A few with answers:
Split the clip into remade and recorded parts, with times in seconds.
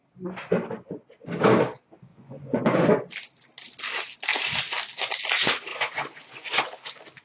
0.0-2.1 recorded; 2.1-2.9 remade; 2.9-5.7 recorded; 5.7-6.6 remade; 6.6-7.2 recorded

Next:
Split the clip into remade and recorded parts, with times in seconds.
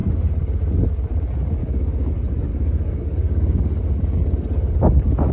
0.0-1.6 recorded; 1.6-2.1 remade; 2.1-2.5 recorded; 2.5-3.8 remade; 3.8-5.3 recorded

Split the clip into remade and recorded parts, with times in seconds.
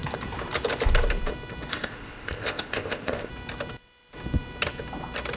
0.0-1.7 recorded; 1.7-3.3 remade; 3.3-5.4 recorded